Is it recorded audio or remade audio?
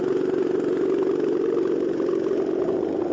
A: recorded